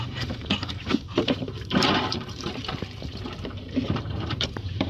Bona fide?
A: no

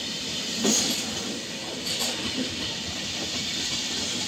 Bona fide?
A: yes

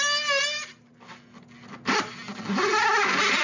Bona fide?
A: yes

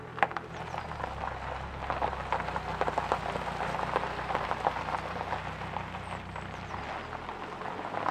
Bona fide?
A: yes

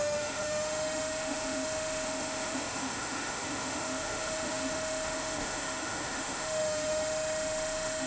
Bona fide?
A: no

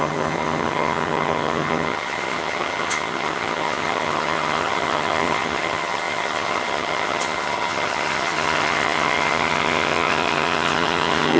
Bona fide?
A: no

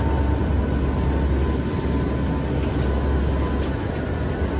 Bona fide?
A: yes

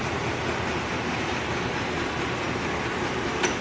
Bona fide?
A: yes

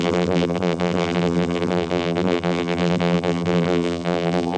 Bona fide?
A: no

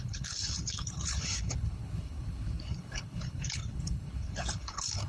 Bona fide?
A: no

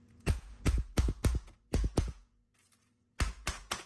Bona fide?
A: no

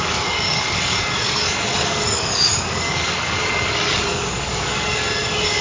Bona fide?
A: no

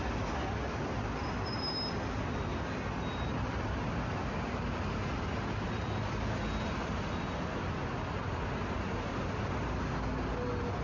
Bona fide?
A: yes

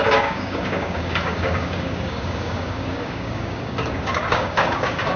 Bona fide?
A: no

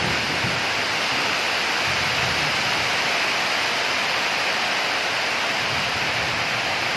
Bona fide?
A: yes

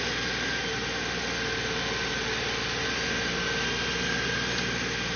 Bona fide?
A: yes